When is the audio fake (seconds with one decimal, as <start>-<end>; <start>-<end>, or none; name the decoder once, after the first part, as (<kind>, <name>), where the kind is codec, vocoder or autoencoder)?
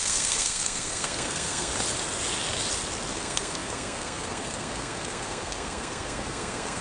0.0-1.7 (codec, SNAC); 3.1-6.8